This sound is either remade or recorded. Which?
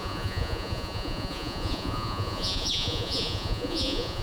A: remade